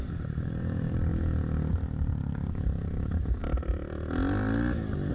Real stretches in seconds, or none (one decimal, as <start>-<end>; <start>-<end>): 1.1-1.7; 3.4-5.1